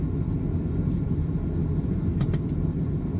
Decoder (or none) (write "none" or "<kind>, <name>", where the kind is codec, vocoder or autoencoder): none